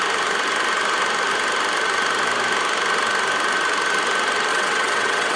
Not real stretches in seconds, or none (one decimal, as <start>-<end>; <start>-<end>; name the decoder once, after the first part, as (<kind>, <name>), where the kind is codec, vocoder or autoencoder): 4.5-5.4 (vocoder, WaveNeXt)